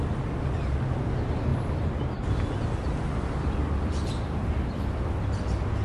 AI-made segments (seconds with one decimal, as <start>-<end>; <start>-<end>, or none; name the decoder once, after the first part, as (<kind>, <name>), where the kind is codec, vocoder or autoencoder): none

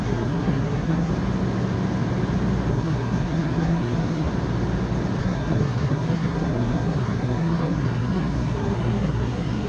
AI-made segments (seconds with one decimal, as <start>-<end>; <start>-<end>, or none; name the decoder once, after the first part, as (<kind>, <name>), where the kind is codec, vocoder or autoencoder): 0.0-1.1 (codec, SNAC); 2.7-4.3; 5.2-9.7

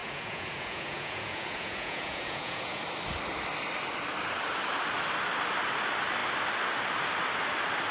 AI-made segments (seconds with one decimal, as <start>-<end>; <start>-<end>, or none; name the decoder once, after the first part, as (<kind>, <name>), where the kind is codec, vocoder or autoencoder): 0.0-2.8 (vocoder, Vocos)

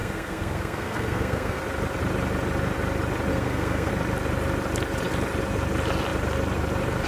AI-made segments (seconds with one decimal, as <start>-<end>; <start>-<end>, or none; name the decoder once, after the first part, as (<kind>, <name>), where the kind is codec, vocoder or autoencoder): 0.0-1.6 (codec, SNAC); 3.3-3.9

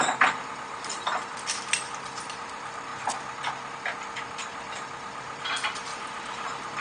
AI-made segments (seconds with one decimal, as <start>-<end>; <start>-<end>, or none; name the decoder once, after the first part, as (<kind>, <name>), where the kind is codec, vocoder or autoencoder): 0.0-2.9 (vocoder, BigVGAN v2); 3.7-6.8

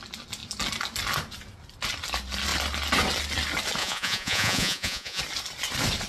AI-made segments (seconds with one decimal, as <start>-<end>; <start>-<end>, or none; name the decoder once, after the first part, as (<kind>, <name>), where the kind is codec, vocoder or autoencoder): 3.8-5.2 (vocoder, Vocos)

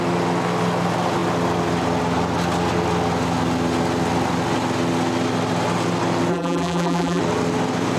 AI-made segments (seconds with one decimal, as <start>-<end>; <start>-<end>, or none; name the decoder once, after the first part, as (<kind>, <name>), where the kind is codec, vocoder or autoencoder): 6.3-7.2 (vocoder, BigVGAN v2)